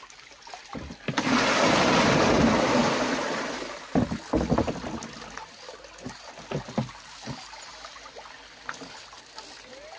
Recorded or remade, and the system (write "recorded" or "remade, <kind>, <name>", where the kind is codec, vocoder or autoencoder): recorded